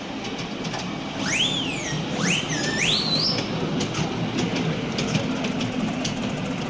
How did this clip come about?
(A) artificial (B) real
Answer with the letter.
B